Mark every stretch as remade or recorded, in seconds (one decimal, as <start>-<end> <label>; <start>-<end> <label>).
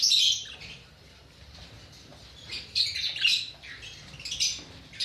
0.0-5.0 recorded